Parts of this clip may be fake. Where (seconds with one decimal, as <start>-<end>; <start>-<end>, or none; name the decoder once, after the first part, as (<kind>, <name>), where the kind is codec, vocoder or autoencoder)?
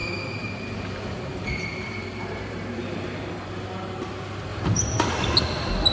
0.0-3.5 (vocoder, BigVGAN v2); 4.5-5.0